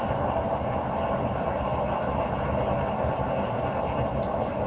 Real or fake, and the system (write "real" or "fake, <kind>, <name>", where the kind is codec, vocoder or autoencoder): real